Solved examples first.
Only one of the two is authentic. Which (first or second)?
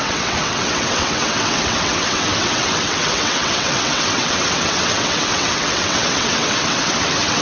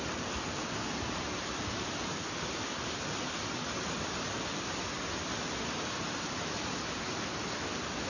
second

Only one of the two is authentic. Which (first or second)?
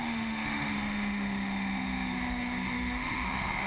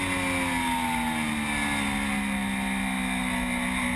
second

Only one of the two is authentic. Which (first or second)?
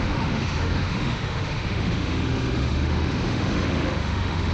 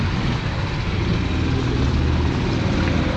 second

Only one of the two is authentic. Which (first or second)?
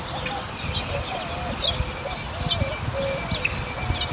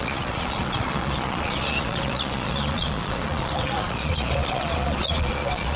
first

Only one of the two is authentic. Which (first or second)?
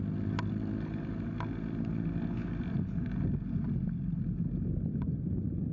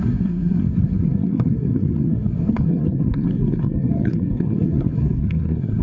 first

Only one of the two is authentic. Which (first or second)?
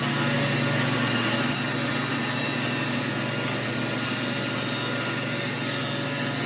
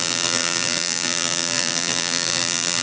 first